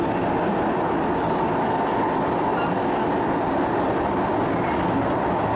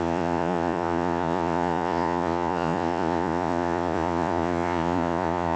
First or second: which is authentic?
first